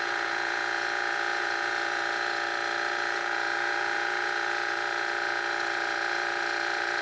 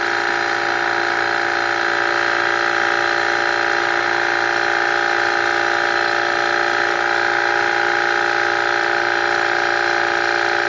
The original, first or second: second